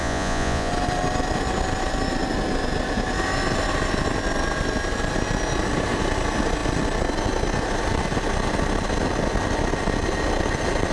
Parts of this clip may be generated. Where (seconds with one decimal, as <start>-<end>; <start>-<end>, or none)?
0.0-0.7